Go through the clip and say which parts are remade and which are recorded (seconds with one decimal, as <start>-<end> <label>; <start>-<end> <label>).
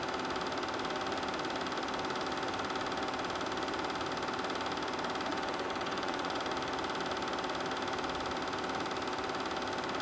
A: 0.0-5.3 recorded; 5.3-6.4 remade; 6.4-10.0 recorded